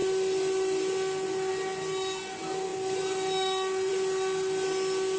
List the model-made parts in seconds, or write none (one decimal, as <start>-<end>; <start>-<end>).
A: none